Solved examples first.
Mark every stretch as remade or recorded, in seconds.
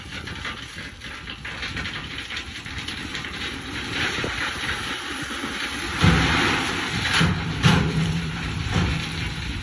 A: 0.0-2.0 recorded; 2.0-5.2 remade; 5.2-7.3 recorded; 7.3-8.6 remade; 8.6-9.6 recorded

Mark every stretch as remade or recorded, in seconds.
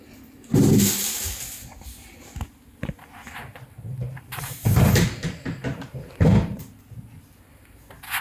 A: 0.0-4.0 recorded; 4.0-6.6 remade; 6.6-8.2 recorded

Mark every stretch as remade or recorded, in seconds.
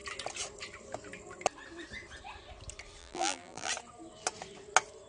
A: 0.0-3.0 recorded; 3.0-3.7 remade; 3.7-5.1 recorded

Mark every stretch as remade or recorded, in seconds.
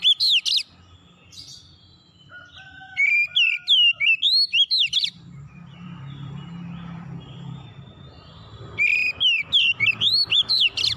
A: 0.0-2.4 recorded; 2.4-3.0 remade; 3.0-4.9 recorded; 4.9-9.0 remade; 9.0-9.6 recorded; 9.6-11.0 remade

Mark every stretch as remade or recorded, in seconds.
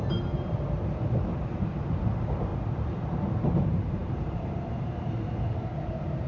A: 0.0-1.3 remade; 1.3-2.0 recorded; 2.0-2.5 remade; 2.5-3.0 recorded; 3.0-6.3 remade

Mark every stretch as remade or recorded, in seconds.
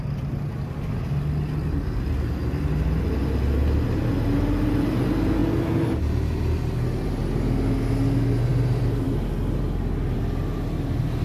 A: 0.0-8.5 recorded; 8.5-9.1 remade; 9.1-11.2 recorded